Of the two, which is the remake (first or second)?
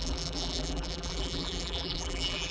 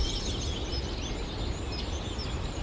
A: first